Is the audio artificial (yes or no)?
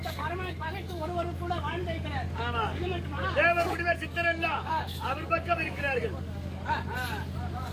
yes